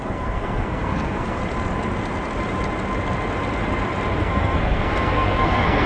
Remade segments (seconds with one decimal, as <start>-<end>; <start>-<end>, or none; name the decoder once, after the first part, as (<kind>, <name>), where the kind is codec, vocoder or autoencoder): 0.0-1.4 (codec, SNAC); 4.2-5.9